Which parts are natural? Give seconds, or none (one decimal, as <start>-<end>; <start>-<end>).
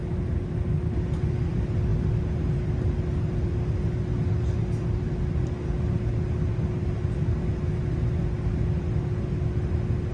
0.0-10.1